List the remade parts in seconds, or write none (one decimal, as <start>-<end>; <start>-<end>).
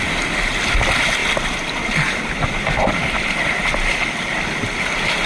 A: none